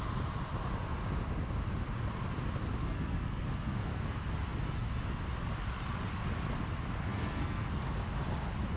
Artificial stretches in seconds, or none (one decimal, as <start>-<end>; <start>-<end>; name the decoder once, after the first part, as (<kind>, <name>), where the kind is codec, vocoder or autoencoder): 2.8-4.0 (codec, SNAC); 7.1-7.8